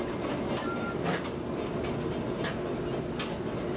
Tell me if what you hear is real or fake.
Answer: real